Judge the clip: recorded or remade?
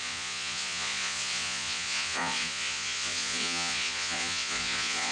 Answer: remade